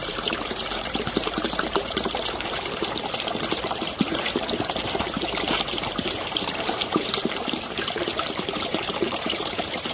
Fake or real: fake